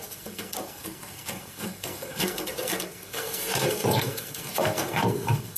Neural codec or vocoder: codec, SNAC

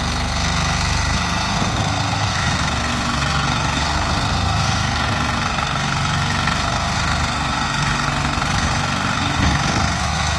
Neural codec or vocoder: codec, SNAC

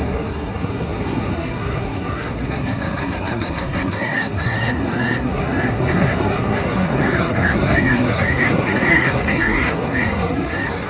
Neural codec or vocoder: codec, SNAC